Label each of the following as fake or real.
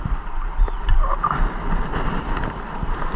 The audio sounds real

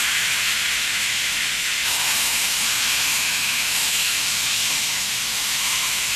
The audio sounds fake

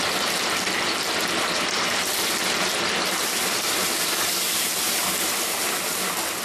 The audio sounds real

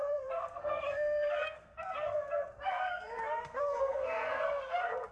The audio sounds fake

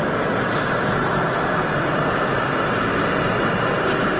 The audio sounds real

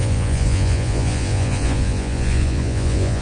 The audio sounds fake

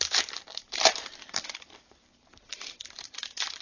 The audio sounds fake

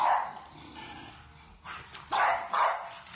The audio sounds real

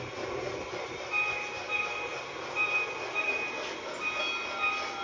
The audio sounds real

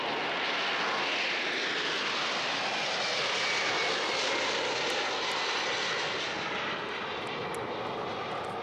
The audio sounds real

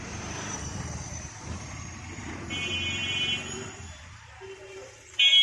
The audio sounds fake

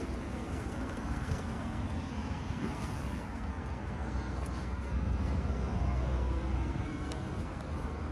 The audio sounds fake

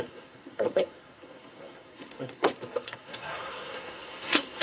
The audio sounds fake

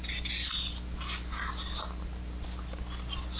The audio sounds real